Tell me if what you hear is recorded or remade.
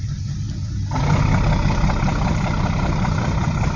recorded